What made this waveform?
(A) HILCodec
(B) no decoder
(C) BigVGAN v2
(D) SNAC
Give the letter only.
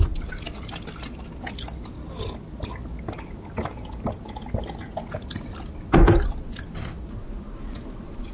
B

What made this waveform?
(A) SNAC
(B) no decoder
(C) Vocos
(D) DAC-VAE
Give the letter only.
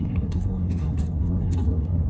A